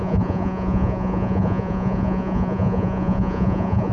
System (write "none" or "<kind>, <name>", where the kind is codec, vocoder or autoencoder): vocoder, Vocos